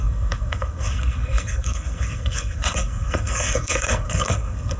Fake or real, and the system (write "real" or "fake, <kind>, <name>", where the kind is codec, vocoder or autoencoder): fake, codec, SNAC